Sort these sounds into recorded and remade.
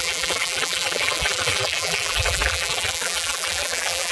remade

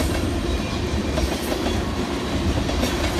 remade